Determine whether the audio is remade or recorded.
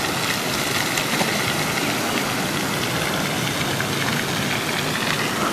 recorded